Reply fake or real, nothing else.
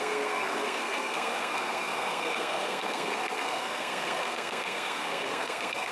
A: fake